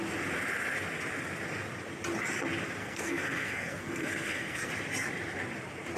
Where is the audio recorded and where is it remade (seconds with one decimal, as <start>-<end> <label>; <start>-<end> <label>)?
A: 0.0-2.8 recorded; 2.8-4.7 remade; 4.7-6.0 recorded